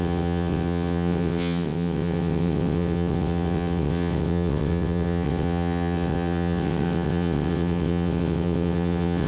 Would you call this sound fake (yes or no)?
yes